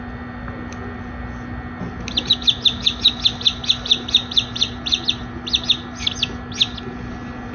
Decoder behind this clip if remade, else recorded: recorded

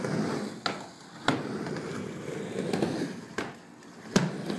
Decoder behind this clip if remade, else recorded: recorded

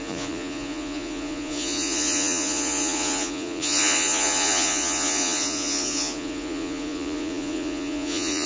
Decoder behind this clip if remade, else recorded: remade, vocoder, Vocos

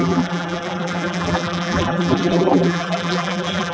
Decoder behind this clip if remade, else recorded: remade, vocoder, BigVGAN v2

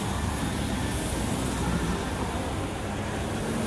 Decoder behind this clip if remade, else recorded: recorded